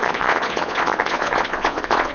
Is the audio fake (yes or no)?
yes